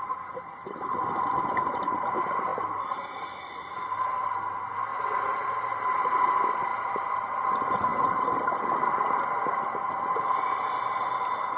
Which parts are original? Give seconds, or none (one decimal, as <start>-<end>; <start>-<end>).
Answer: 0.0-4.9; 5.5-6.7; 7.5-11.6